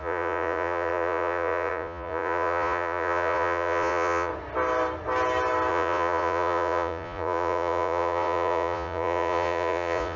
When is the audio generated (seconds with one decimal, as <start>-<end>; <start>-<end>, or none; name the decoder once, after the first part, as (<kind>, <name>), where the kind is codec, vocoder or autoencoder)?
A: 0.0-4.3 (vocoder, Vocos); 5.7-10.2